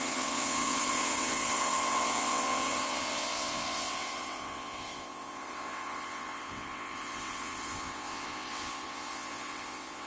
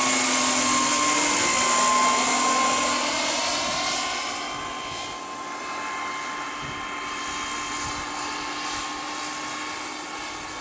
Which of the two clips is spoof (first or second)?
first